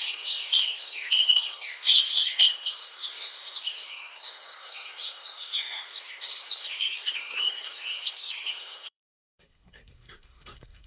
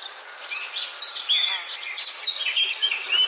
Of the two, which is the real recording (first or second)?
second